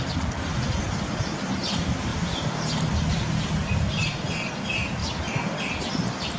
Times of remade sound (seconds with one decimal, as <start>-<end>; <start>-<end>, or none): 0.5-1.4; 2.1-4.5